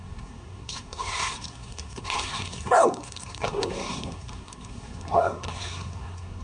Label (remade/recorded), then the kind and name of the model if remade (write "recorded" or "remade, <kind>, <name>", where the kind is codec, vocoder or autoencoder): remade, codec, SNAC